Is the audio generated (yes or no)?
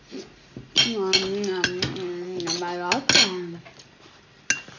no